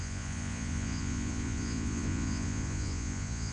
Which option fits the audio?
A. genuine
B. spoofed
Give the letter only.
B